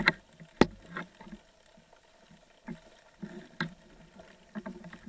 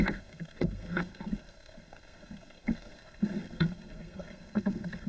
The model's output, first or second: second